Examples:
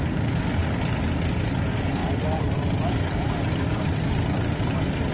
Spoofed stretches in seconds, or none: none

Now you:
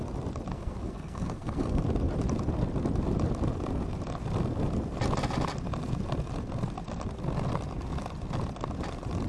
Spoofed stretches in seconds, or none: 0.5-1.8 (codec, SNAC)

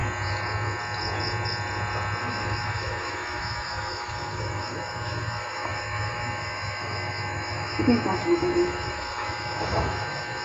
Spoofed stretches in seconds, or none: 2.2-10.4 (autoencoder, DAC-VAE)

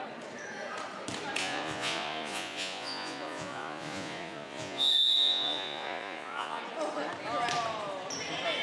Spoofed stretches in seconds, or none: 1.4-6.6 (vocoder, Vocos)

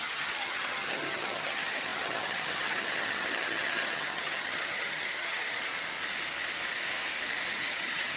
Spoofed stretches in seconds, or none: 0.0-5.7 (vocoder, HiFi-GAN); 7.5-8.2